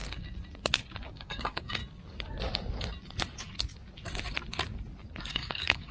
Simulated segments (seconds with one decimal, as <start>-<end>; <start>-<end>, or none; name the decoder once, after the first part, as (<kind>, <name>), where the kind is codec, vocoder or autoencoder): 1.1-1.8 (codec, DAC); 5.3-5.9